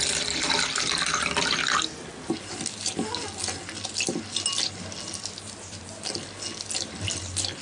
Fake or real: real